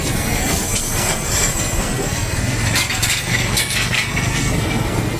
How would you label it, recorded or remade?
remade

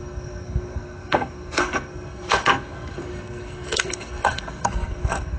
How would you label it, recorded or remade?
remade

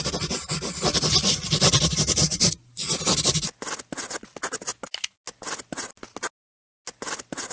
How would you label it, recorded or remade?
recorded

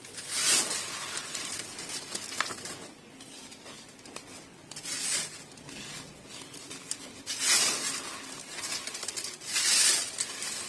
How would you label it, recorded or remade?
recorded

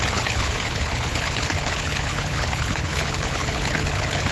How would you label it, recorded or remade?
remade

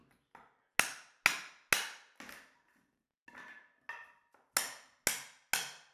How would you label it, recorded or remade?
recorded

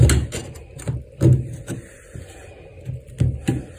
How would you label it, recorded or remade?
recorded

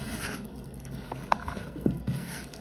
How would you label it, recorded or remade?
remade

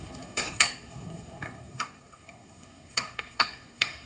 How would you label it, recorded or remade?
remade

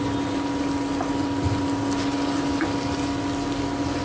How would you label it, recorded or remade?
recorded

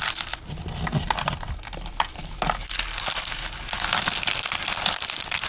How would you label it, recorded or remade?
recorded